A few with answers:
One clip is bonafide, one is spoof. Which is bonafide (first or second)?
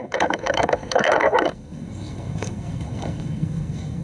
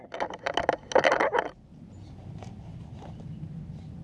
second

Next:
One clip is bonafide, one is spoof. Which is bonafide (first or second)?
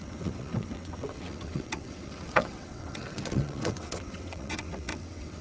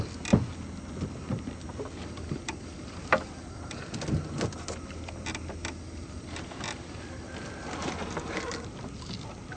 second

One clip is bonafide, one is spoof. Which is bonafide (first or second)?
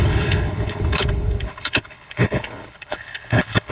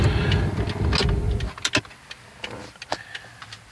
second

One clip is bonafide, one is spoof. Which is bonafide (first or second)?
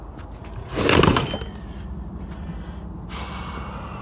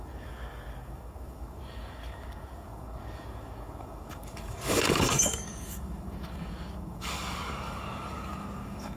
first